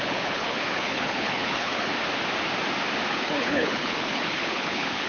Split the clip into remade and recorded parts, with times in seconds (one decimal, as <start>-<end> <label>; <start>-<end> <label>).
0.0-1.9 remade; 1.9-3.1 recorded; 3.1-5.1 remade